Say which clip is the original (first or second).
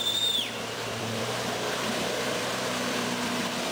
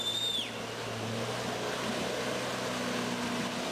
second